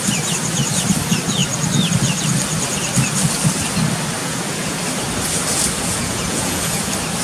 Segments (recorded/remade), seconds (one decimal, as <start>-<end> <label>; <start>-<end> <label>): 0.0-4.2 recorded; 4.2-4.8 remade; 4.8-5.9 recorded; 5.9-6.8 remade; 6.8-7.2 recorded

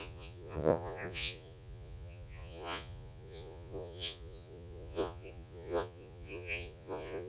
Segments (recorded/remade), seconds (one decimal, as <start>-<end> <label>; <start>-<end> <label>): 0.0-7.3 remade

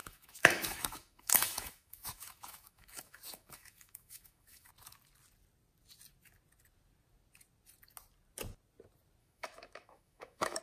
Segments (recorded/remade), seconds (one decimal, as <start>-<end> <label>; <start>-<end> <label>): 0.0-4.7 remade; 4.7-9.2 recorded; 9.2-10.6 remade

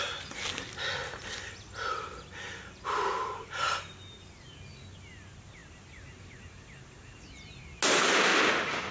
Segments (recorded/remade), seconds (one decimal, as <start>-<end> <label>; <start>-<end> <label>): 0.0-8.9 recorded

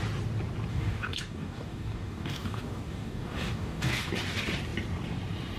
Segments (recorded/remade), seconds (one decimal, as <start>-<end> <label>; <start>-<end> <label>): 0.0-0.7 recorded; 0.7-4.1 remade; 4.1-5.6 recorded

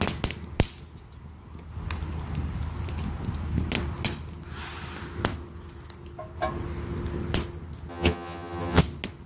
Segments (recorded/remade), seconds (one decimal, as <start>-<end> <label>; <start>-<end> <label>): 0.0-7.9 recorded; 7.9-8.8 remade; 8.8-9.3 recorded

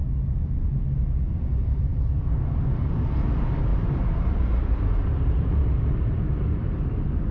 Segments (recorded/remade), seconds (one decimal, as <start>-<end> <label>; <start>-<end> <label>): 0.0-3.7 recorded; 3.7-6.2 remade; 6.2-7.3 recorded

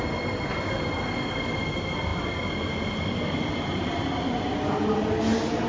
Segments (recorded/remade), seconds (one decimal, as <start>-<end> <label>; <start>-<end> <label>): 0.0-5.7 recorded